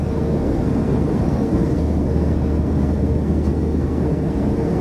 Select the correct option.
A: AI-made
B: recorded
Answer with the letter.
A